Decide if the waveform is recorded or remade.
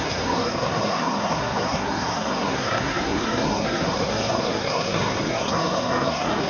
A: remade